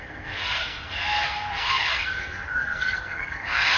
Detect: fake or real fake